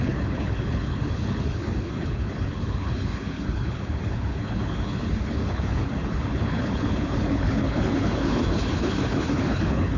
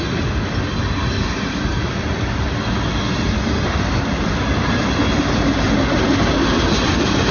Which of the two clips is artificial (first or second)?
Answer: first